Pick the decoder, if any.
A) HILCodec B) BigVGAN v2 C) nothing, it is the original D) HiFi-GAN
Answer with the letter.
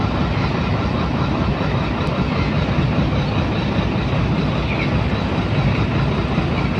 C